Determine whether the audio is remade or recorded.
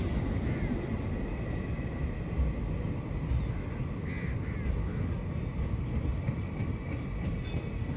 recorded